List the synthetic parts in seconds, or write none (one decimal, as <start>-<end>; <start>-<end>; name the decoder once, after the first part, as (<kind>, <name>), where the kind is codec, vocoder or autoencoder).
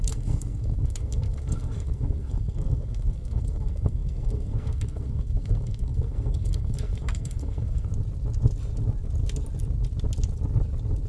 0.0-7.9 (codec, SNAC)